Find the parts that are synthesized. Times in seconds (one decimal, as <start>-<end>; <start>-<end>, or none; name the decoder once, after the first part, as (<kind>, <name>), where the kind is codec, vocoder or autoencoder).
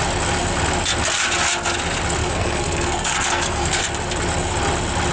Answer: 2.2-3.8 (codec, SNAC)